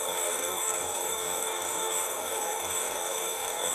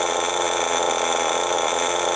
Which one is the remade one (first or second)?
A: first